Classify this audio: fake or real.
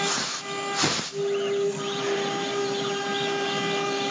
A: real